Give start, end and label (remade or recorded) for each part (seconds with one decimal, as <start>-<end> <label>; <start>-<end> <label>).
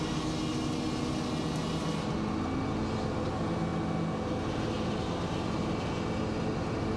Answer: 0.0-7.0 recorded